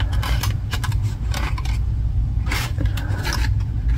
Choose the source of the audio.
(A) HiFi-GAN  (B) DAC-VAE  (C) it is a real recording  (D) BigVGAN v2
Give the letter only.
C